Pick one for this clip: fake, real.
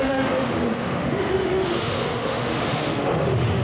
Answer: fake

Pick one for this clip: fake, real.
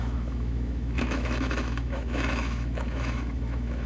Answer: fake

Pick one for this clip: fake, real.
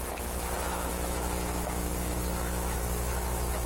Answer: fake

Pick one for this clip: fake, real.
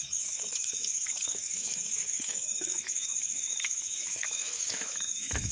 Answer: fake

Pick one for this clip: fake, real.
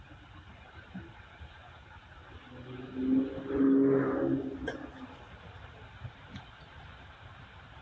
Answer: real